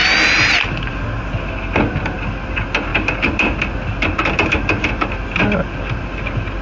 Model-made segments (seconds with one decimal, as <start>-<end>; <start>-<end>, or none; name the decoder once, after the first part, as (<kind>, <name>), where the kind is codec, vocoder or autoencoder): none

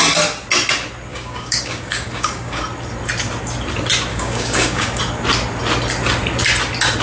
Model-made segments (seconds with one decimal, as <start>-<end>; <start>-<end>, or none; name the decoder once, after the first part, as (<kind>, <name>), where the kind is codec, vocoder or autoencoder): 1.1-2.6 (codec, DAC); 4.1-5.0

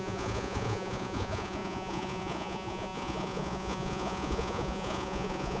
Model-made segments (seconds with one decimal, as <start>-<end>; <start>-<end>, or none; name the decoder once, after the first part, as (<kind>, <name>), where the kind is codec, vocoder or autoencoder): 0.0-5.6 (vocoder, Vocos)

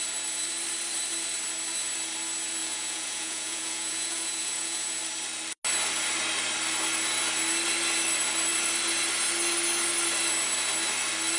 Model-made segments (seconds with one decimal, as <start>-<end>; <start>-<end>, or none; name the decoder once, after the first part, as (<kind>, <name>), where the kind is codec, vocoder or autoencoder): 2.6-5.0 (vocoder, Vocos)

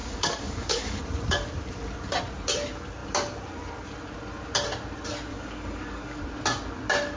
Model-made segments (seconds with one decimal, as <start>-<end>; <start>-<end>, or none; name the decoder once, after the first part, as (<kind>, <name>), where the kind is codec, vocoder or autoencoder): 0.0-1.0 (codec, DAC); 5.3-6.2

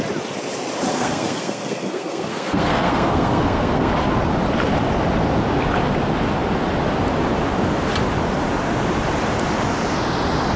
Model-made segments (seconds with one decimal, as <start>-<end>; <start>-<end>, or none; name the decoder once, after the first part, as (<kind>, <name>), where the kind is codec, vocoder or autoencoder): 0.9-3.9 (codec, SNAC)

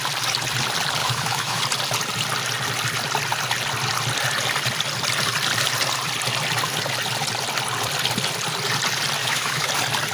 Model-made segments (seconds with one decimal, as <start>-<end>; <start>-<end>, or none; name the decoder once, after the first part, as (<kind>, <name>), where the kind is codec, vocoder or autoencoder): 1.0-1.6 (autoencoder, DAC-VAE); 9.2-9.7